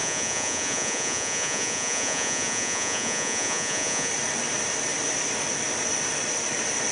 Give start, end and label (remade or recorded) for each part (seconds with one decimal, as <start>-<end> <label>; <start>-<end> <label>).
0.0-4.1 remade; 4.1-6.9 recorded